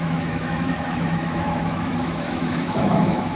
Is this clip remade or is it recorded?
remade